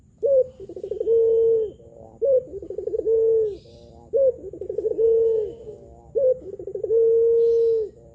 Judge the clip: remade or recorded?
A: recorded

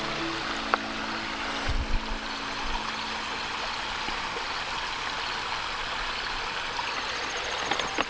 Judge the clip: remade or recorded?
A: recorded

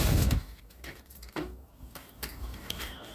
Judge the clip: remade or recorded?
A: remade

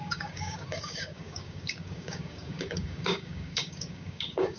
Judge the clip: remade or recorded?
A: remade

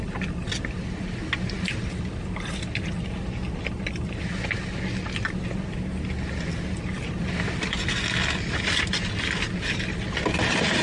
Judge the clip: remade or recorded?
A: recorded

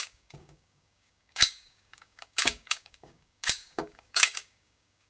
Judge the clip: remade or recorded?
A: remade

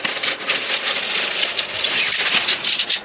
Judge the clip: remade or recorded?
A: recorded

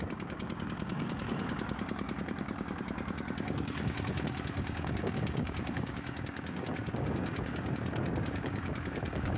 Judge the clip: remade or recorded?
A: remade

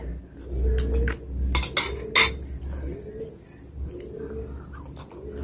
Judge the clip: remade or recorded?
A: recorded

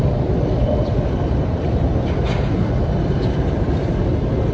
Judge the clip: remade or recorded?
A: recorded